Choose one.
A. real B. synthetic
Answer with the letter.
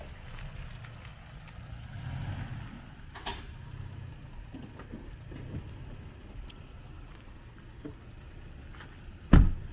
A